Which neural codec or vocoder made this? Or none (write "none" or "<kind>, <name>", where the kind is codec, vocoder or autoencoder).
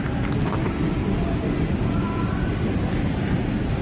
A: none